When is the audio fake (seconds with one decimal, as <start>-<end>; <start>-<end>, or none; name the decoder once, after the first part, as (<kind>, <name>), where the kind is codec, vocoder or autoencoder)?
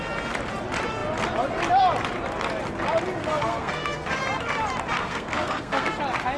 3.2-4.2 (codec, SNAC); 5.0-5.9